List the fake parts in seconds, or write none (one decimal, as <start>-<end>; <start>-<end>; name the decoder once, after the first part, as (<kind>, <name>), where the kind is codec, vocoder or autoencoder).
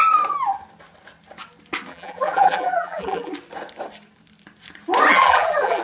1.9-3.3 (vocoder, BigVGAN v2); 5.1-5.8